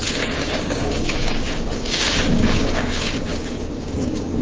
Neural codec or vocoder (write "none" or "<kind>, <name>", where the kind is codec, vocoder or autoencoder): codec, DAC